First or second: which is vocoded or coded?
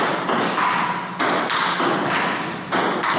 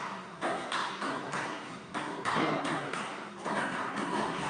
second